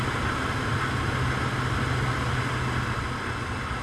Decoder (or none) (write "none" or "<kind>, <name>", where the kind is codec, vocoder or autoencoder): none